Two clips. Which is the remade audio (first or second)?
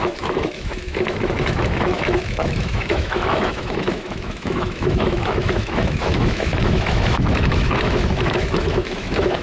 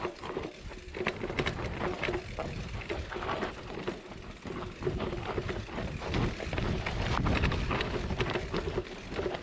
first